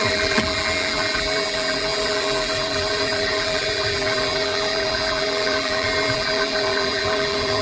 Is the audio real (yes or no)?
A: no